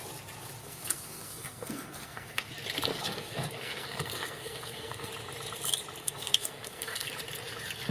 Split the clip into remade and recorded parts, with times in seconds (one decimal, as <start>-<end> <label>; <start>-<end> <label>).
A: 0.0-0.6 recorded; 0.6-2.5 remade; 2.5-2.9 recorded; 2.9-5.1 remade; 5.1-6.0 recorded; 6.0-7.1 remade; 7.1-7.9 recorded